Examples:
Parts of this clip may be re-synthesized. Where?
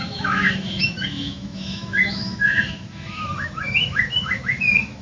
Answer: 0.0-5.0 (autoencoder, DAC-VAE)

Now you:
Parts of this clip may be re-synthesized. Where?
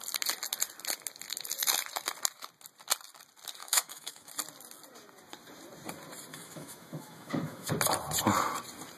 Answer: 3.6-4.3 (autoencoder, DAC-VAE); 6.3-7.7